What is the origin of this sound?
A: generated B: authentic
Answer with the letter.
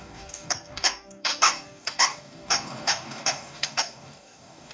A